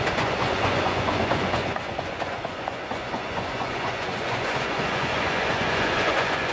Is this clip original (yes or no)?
no